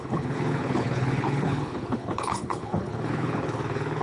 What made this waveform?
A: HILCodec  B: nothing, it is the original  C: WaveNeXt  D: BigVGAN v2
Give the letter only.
A